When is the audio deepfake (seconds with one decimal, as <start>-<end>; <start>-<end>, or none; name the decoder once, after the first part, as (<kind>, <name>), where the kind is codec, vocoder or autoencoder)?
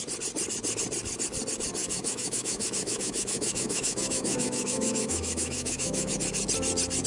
1.8-6.1 (autoencoder, DAC-VAE)